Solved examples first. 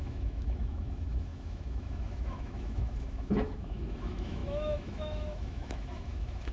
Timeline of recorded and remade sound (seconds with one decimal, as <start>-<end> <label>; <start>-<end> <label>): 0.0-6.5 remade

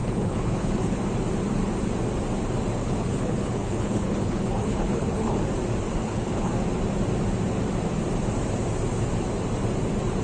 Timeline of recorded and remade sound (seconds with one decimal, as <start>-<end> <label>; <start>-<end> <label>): 0.0-1.0 remade; 1.0-2.8 recorded; 2.8-5.4 remade; 5.4-6.0 recorded; 6.0-6.5 remade; 6.5-10.2 recorded

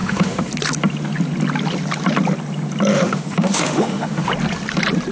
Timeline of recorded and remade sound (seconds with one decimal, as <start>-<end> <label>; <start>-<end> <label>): 0.0-0.5 remade; 0.5-2.9 recorded; 2.9-4.3 remade; 4.3-5.1 recorded

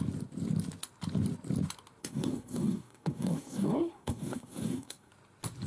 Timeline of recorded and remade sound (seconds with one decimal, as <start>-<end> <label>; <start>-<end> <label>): 0.0-2.0 recorded; 2.0-5.1 remade; 5.1-5.7 recorded

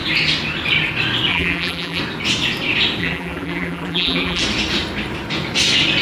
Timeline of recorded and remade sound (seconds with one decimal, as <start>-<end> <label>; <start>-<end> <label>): 0.0-1.3 recorded; 1.3-2.0 remade; 2.0-3.0 recorded; 3.0-4.4 remade; 4.4-6.0 recorded